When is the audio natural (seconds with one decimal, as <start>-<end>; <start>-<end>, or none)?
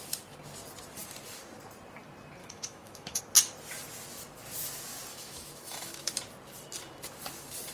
0.0-2.4; 3.2-5.1; 6.1-7.7